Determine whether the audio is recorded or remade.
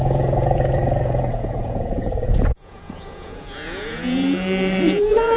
remade